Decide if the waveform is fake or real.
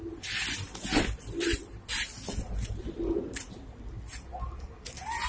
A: real